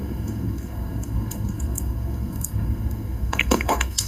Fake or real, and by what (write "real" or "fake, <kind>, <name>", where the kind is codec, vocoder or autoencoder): fake, codec, SNAC